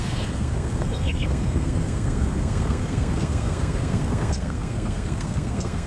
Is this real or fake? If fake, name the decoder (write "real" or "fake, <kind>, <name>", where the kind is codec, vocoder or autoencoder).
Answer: fake, codec, SNAC